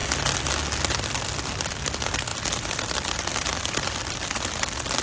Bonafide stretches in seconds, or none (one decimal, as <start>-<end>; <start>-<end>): 0.0-2.3